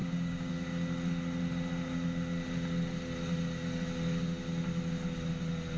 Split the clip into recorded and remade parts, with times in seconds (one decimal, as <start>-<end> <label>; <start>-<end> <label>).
0.0-0.5 remade; 0.5-5.8 recorded

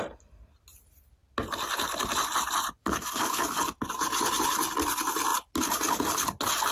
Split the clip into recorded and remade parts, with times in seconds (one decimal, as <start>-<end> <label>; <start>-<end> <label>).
0.0-2.8 recorded; 2.8-3.6 remade; 3.6-6.7 recorded

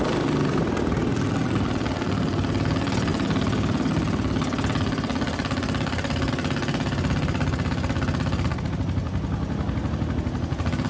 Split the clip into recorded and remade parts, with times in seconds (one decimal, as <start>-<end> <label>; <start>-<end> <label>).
0.0-10.9 recorded

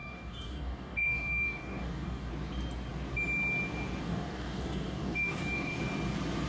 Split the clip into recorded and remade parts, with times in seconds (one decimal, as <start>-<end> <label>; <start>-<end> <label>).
0.0-2.3 remade; 2.3-4.0 recorded; 4.0-5.8 remade; 5.8-6.5 recorded